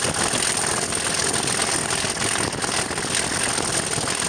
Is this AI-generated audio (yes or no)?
no